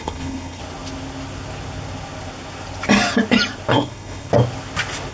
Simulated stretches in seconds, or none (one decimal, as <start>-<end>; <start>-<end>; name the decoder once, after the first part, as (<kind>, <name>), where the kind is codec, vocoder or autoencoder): 0.0-0.6 (codec, HILCodec); 3.7-4.3